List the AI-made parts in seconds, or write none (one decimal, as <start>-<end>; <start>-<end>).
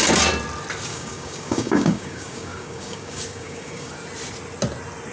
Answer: 0.9-3.9